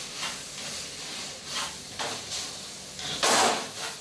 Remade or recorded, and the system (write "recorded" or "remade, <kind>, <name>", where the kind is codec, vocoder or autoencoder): recorded